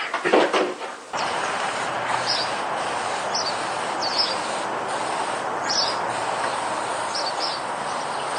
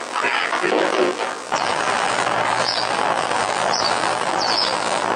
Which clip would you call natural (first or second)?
first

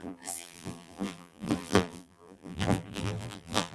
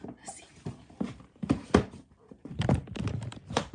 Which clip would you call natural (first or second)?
second